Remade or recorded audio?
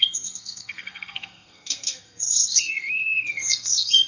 remade